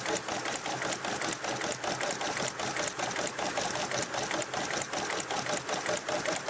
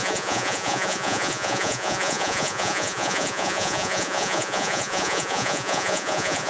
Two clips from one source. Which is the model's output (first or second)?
second